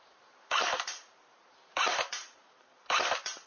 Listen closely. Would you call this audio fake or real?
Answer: fake